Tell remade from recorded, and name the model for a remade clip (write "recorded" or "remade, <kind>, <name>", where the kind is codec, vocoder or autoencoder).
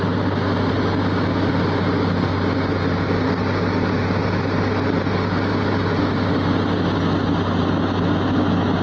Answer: recorded